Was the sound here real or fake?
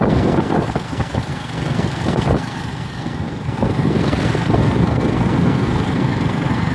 fake